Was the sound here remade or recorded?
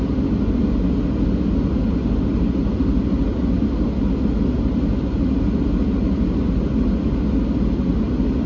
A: recorded